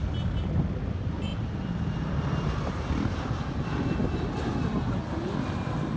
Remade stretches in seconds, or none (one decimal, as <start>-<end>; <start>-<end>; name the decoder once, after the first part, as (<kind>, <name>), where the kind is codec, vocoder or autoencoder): none